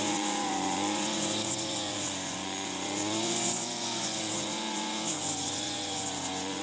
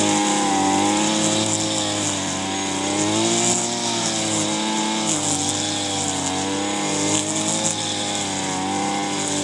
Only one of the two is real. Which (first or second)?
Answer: second